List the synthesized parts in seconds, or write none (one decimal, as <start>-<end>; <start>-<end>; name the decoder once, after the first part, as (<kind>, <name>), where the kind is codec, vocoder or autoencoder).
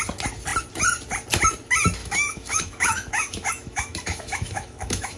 2.0-5.2 (autoencoder, DAC-VAE)